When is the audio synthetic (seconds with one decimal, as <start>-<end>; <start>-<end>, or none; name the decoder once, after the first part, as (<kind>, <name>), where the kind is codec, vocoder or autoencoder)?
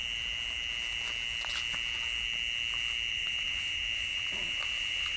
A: 3.1-5.2 (vocoder, BigVGAN v2)